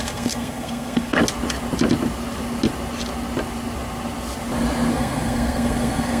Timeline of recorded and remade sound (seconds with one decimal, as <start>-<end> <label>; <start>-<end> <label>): 0.0-1.2 remade; 1.2-4.9 recorded; 4.9-6.2 remade